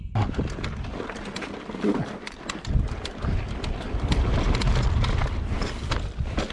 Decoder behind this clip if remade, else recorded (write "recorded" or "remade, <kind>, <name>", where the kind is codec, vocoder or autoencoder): recorded